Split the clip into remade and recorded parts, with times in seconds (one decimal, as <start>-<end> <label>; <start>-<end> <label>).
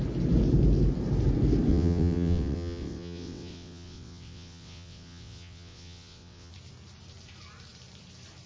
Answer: 0.0-1.7 recorded; 1.7-6.5 remade; 6.5-8.5 recorded